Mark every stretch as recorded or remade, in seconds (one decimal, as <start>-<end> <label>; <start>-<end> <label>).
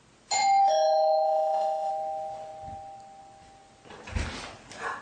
0.0-0.6 recorded; 0.6-1.9 remade; 1.9-5.0 recorded